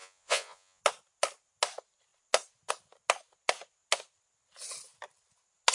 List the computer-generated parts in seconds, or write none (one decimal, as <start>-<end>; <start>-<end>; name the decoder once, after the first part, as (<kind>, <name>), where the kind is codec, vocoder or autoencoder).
0.0-0.8 (vocoder, Vocos)